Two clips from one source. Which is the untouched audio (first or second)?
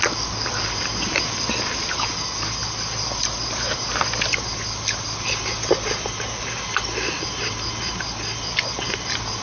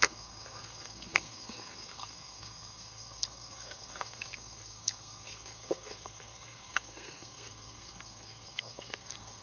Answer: first